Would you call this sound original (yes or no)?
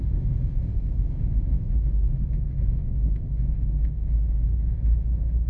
no